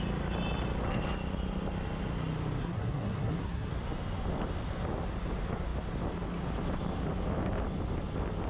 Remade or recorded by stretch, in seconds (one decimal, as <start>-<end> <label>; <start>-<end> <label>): 0.0-2.6 recorded; 2.6-3.7 remade; 3.7-8.5 recorded